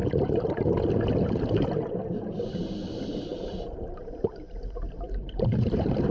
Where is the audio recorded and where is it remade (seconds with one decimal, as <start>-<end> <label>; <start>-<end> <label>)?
0.0-3.3 recorded; 3.3-6.1 remade